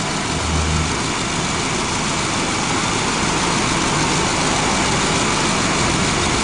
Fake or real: real